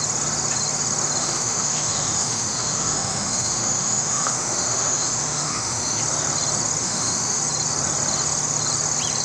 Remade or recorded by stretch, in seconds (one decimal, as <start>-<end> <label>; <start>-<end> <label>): 0.0-1.2 recorded; 1.2-6.0 remade; 6.0-6.8 recorded; 6.8-7.4 remade; 7.4-9.2 recorded